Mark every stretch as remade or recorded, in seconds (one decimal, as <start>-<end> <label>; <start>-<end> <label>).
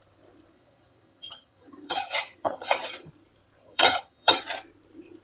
0.0-0.5 recorded; 0.5-3.1 remade; 3.1-3.6 recorded; 3.6-4.4 remade; 4.4-5.2 recorded